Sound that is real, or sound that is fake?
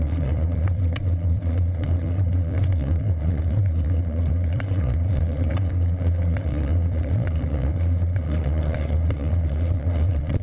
fake